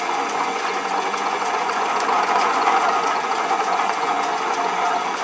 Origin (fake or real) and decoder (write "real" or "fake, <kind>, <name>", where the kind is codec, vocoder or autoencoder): fake, vocoder, Vocos